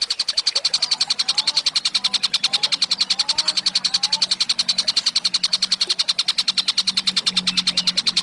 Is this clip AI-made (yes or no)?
no